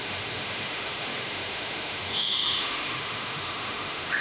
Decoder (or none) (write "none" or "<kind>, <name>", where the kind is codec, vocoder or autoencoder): autoencoder, DAC-VAE